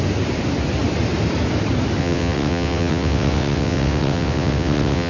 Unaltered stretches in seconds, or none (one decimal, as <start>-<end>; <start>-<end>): 0.0-2.0